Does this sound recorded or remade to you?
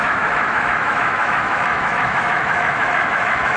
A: remade